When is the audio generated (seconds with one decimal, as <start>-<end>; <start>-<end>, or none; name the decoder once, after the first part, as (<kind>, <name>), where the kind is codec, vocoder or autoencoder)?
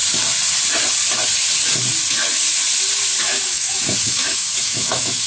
3.2-5.3 (autoencoder, DAC-VAE)